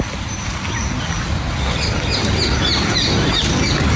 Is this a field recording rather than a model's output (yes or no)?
yes